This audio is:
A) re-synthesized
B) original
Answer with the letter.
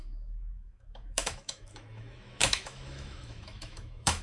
A